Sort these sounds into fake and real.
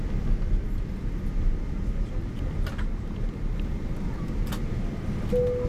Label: real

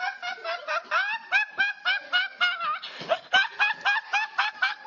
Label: real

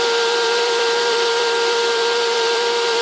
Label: fake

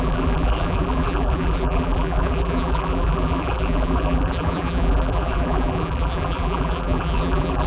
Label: fake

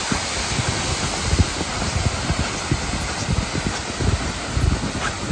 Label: real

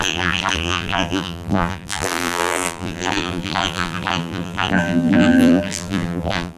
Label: fake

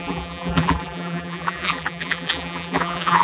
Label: fake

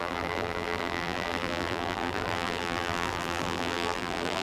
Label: fake